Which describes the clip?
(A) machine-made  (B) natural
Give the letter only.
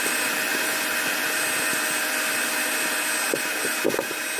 B